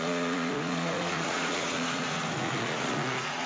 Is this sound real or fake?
fake